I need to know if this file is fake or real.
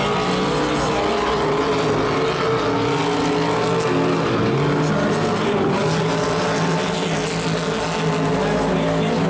real